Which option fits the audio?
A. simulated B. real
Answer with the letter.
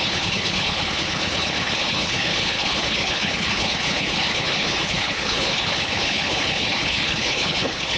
A